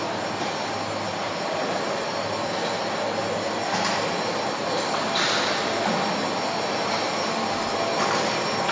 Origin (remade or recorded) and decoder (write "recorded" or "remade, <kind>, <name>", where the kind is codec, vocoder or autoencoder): recorded